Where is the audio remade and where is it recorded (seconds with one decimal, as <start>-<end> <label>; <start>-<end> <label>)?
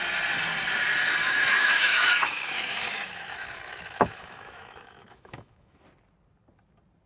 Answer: 0.0-1.5 recorded; 1.5-5.8 remade; 5.8-7.1 recorded